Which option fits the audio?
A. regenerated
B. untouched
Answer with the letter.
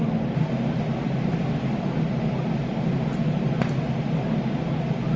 B